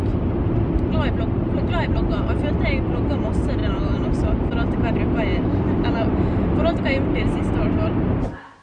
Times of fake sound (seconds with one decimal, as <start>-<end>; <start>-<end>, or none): none

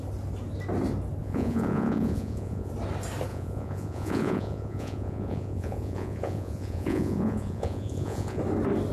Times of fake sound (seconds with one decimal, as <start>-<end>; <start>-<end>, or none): 1.2-2.7; 3.3-8.4

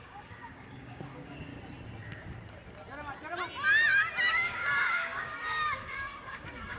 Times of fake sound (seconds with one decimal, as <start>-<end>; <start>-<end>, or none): 0.0-1.5; 4.3-6.8

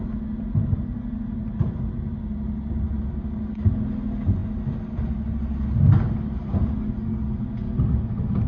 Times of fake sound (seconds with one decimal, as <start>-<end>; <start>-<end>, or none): none

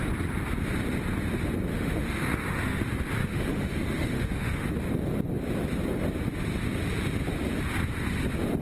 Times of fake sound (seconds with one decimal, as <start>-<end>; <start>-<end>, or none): 1.7-2.8; 3.2-4.7